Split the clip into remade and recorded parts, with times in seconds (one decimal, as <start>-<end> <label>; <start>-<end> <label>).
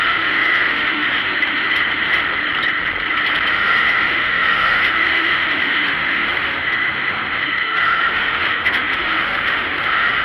0.0-2.2 remade; 2.2-3.5 recorded; 3.5-10.2 remade